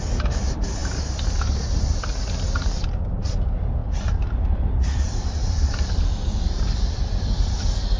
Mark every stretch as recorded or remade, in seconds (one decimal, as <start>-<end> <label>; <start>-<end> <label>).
0.0-0.8 remade; 0.8-2.7 recorded; 2.7-3.8 remade; 3.8-4.7 recorded; 4.7-8.0 remade